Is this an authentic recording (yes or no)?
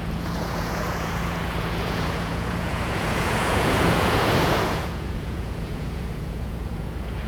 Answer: no